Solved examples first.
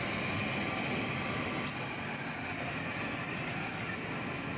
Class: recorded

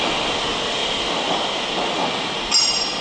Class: recorded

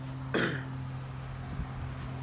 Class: recorded